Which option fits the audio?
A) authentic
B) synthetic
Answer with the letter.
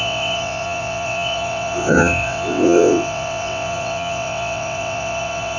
B